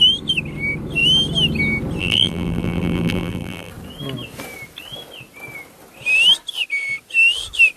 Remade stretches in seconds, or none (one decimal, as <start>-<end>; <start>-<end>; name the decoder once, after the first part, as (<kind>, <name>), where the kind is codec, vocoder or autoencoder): 2.0-3.7 (vocoder, BigVGAN v2)

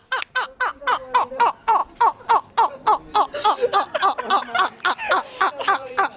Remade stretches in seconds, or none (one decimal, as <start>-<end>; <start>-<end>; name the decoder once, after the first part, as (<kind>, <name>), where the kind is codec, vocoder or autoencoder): 0.0-0.8 (vocoder, BigVGAN v2); 1.3-1.8; 5.5-6.2

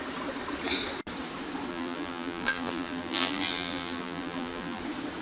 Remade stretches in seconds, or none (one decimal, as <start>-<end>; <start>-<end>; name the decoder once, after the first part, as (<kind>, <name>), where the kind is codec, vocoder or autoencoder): 1.7-4.8 (vocoder, BigVGAN v2)

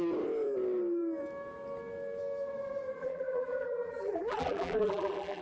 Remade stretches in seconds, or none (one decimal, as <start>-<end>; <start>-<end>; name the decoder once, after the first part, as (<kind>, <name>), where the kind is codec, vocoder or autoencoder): 3.0-5.4 (vocoder, BigVGAN v2)

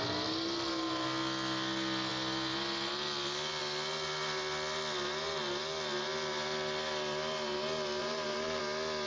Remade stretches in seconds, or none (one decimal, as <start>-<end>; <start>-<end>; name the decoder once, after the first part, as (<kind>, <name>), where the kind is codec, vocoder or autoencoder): 8.0-8.6 (vocoder, BigVGAN v2)